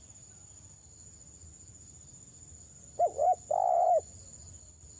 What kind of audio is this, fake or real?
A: real